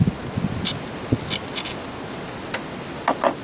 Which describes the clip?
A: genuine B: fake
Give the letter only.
A